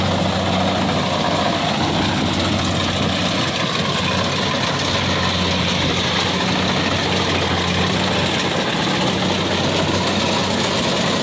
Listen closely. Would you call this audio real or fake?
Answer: real